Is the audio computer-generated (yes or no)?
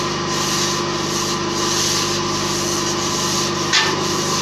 no